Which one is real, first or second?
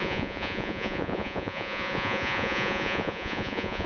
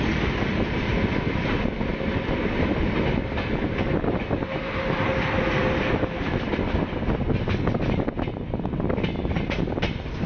second